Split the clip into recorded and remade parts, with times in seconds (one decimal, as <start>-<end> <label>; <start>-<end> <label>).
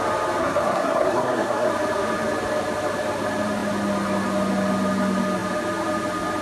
0.0-0.4 recorded; 0.4-1.7 remade; 1.7-6.4 recorded